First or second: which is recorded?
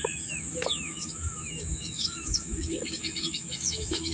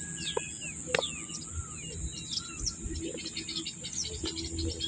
second